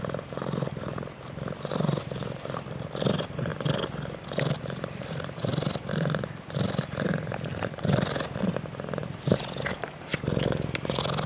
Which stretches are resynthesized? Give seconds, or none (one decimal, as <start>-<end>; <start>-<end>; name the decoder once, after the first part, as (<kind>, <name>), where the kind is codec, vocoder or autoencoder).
0.0-3.5 (vocoder, BigVGAN v2); 4.6-5.5; 8.5-10.1